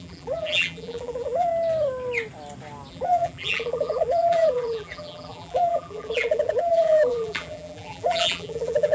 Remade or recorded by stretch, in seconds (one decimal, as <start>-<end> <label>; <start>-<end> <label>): 0.0-1.5 remade; 1.5-2.9 recorded; 2.9-8.9 remade